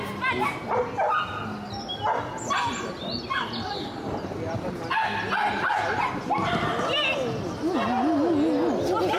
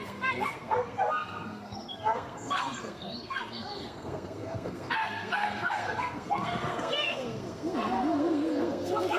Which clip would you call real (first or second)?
first